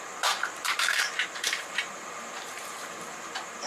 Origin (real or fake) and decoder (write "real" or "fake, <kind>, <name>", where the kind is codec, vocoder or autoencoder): fake, vocoder, BigVGAN v2